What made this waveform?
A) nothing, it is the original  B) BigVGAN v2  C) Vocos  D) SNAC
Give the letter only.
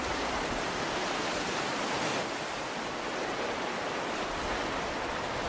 A